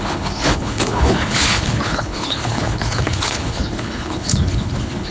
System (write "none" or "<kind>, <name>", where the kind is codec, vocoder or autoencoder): codec, HILCodec